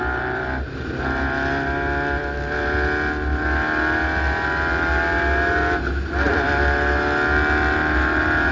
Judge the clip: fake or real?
real